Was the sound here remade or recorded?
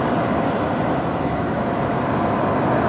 recorded